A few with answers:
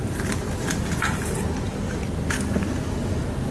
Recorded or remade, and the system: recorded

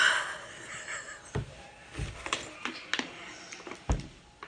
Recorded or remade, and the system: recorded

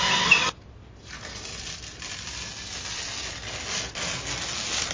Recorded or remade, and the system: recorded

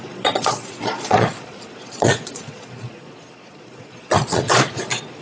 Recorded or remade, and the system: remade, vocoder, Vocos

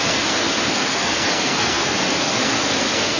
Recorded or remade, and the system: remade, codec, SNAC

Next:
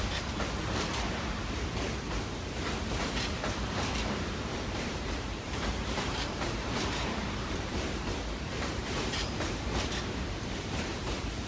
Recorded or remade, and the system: remade, vocoder, BigVGAN v2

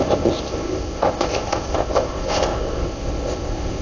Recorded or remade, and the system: remade, codec, ZipCodec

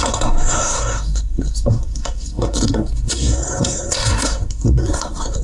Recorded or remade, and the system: remade, codec, SNAC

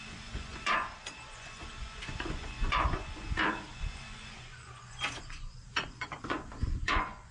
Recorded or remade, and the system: remade, vocoder, Vocos